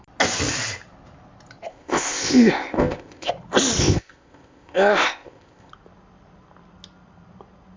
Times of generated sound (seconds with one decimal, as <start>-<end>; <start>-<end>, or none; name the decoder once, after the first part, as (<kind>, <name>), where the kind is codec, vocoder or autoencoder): 1.7-3.3 (codec, ZipCodec); 3.8-5.7